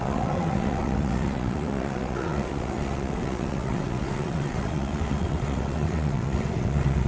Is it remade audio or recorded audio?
remade